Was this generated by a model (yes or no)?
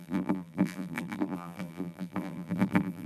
yes